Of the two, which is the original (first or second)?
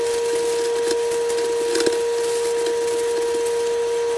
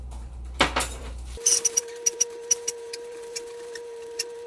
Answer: first